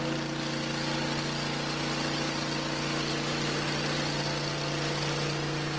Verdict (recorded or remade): recorded